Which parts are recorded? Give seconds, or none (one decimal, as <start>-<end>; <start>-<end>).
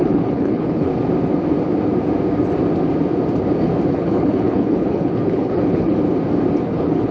0.9-3.9; 6.0-6.6